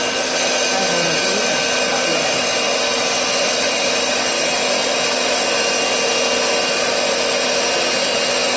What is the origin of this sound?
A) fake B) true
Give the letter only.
B